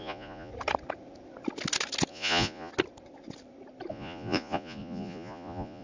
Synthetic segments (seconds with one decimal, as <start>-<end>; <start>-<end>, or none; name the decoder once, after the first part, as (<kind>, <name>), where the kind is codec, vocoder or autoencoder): 0.0-0.5 (vocoder, Vocos); 2.1-2.7; 3.9-5.8